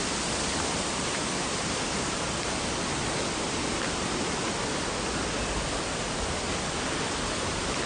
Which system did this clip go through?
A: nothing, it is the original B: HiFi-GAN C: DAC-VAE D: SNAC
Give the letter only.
A